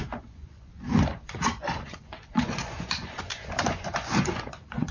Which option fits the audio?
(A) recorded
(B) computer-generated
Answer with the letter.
B